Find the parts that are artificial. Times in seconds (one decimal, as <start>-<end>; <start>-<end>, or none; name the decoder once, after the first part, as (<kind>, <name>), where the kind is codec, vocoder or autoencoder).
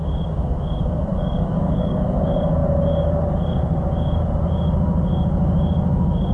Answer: 1.1-2.2 (codec, DAC)